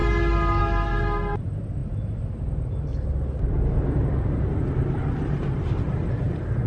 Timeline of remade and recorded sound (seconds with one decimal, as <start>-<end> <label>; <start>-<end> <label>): 0.0-4.5 recorded; 4.5-6.7 remade